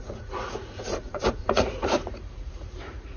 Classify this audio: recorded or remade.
remade